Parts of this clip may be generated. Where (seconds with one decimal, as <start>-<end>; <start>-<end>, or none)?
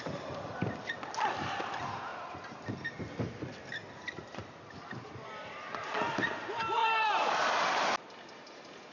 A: 6.8-7.8